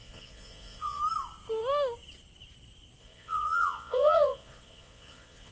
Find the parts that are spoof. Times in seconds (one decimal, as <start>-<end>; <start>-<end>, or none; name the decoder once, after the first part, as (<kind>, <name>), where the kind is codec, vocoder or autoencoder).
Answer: 0.0-1.0 (vocoder, Vocos); 3.0-5.5